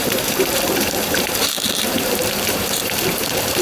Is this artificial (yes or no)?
yes